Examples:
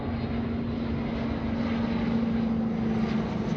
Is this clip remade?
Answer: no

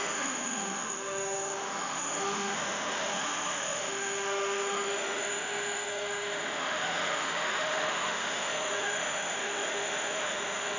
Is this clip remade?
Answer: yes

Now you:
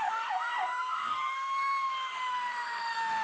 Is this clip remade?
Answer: yes